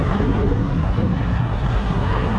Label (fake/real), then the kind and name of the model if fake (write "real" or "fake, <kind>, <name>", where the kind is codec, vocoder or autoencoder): fake, codec, SNAC